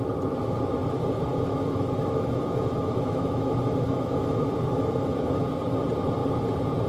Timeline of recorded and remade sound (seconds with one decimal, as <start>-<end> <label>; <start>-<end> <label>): 0.0-1.3 recorded; 1.3-5.4 remade; 5.4-6.9 recorded